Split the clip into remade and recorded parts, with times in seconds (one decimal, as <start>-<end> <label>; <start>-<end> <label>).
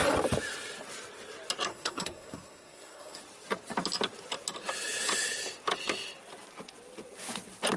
0.0-1.7 recorded; 1.7-3.2 remade; 3.2-7.8 recorded